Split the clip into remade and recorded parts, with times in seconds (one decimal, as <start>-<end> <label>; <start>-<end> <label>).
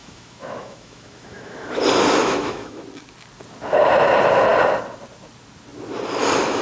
0.0-1.8 remade; 1.8-2.2 recorded; 2.2-2.8 remade; 2.8-6.6 recorded